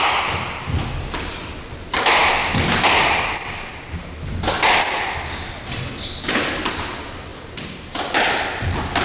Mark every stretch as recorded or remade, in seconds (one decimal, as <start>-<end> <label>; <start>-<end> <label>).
0.0-9.0 recorded

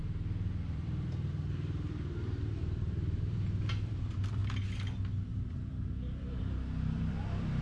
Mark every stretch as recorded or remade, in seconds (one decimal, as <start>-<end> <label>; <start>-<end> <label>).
0.0-4.4 remade; 4.4-5.3 recorded; 5.3-7.6 remade